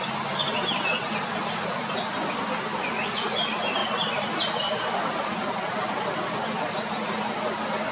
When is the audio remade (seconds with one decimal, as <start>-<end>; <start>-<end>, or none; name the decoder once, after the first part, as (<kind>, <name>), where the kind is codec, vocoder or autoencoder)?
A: 3.8-4.4 (vocoder, BigVGAN v2)